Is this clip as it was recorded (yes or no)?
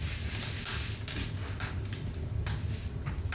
yes